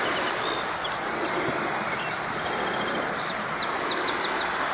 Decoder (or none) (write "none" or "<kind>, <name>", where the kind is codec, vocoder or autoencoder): none